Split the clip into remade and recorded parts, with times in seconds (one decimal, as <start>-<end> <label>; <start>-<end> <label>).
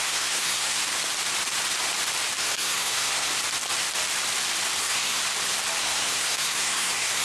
0.0-0.8 remade; 0.8-2.4 recorded; 2.4-3.3 remade; 3.3-4.8 recorded; 4.8-5.2 remade; 5.2-5.8 recorded; 5.8-7.2 remade